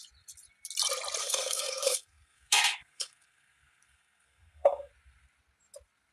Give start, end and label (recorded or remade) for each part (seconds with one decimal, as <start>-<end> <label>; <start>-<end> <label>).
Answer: 0.0-1.2 recorded; 1.2-4.9 remade; 4.9-6.1 recorded